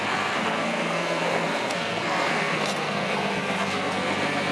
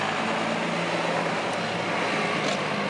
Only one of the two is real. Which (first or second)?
second